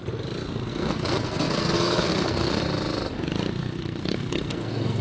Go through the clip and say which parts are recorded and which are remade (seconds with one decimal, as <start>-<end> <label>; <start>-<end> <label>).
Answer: 0.0-0.7 recorded; 0.7-2.5 remade; 2.5-3.6 recorded; 3.6-5.0 remade